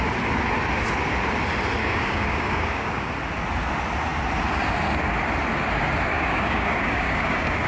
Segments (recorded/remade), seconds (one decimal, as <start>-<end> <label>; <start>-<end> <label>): 0.0-1.8 recorded; 1.8-3.1 remade; 3.1-6.1 recorded; 6.1-7.7 remade